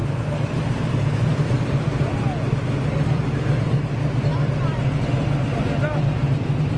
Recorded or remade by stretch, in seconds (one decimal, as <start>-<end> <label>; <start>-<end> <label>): 0.0-1.6 remade; 1.6-6.8 recorded